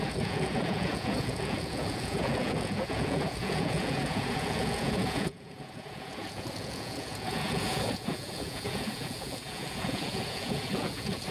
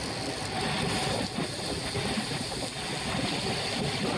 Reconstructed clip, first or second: first